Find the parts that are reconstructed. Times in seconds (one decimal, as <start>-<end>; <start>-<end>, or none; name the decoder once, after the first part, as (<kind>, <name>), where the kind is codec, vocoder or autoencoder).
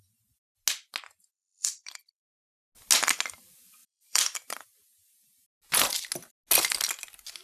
1.3-2.2 (vocoder, BigVGAN v2); 3.8-4.6